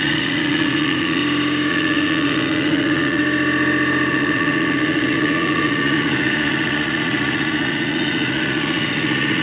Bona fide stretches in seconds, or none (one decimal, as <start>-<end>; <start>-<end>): 1.2-1.7; 3.2-4.1